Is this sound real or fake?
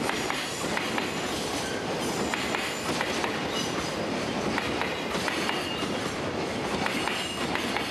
real